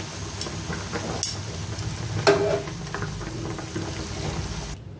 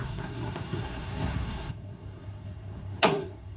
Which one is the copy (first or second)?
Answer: second